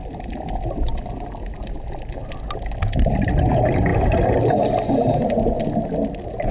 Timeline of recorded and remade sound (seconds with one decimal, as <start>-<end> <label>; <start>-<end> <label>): 0.0-6.5 recorded